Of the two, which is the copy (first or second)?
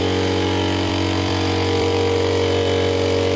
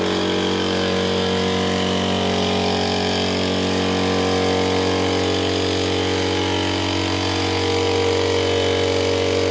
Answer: first